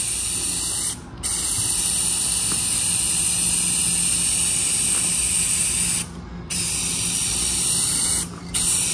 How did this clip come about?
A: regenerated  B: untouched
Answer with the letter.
B